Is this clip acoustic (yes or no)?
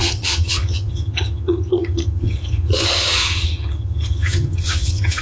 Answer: no